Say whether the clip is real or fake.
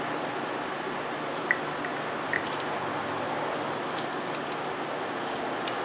real